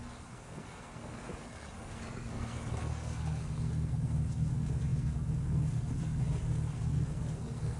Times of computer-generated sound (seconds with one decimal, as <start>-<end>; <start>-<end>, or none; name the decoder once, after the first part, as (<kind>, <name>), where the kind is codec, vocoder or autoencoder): 0.0-7.8 (codec, SNAC)